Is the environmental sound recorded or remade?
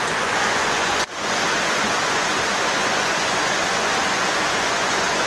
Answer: remade